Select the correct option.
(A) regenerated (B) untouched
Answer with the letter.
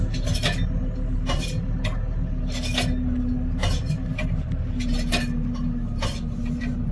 B